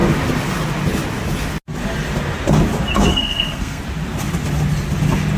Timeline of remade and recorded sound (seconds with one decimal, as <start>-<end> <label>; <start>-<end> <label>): 0.0-3.1 recorded; 3.1-3.8 remade; 3.8-5.4 recorded